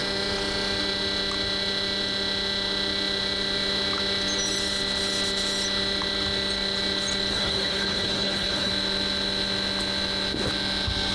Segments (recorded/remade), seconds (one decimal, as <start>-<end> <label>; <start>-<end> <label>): 0.0-7.3 recorded; 7.3-8.7 remade; 8.7-11.1 recorded